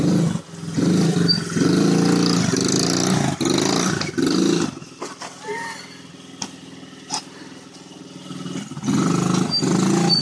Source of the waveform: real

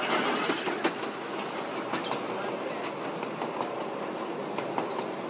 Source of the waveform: real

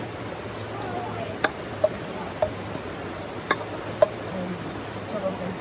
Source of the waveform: fake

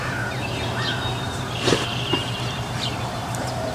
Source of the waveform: fake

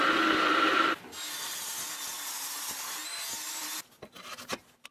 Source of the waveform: real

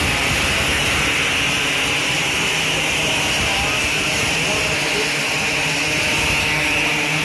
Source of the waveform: real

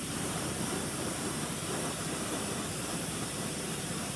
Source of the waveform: fake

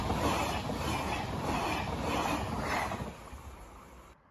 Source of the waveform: real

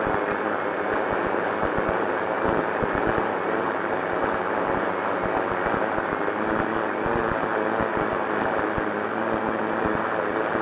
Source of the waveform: real